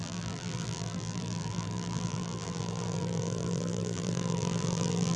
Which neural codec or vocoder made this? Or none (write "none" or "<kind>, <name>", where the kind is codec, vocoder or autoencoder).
vocoder, BigVGAN v2